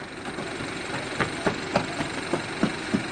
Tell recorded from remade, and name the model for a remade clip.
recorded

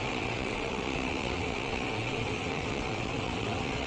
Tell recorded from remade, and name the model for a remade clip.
remade, vocoder, WaveNeXt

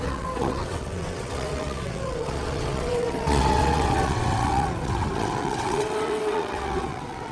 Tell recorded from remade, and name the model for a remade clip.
remade, vocoder, WaveNeXt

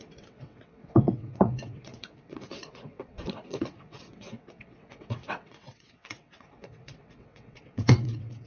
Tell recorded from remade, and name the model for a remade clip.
remade, vocoder, WaveNeXt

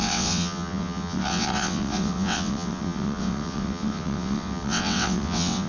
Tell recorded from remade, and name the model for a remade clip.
remade, vocoder, WaveNeXt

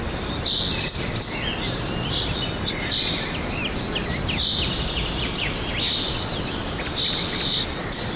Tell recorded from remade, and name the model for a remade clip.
recorded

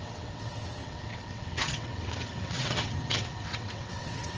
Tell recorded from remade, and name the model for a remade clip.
remade, vocoder, WaveNeXt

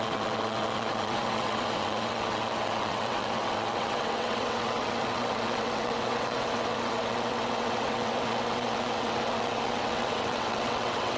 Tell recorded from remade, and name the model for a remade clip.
remade, vocoder, WaveNeXt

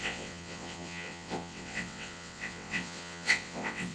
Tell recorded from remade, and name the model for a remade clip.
remade, vocoder, WaveNeXt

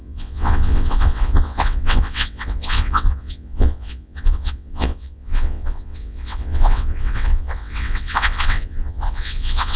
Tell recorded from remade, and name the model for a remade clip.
remade, vocoder, WaveNeXt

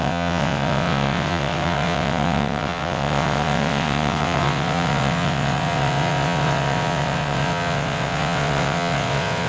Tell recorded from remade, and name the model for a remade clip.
remade, vocoder, WaveNeXt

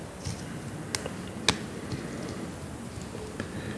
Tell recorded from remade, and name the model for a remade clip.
recorded